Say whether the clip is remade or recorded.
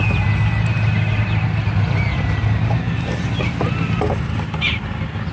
recorded